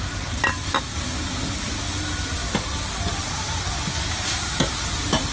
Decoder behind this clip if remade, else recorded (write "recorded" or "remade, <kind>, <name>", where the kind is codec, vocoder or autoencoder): recorded